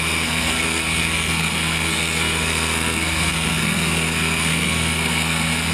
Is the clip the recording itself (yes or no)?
no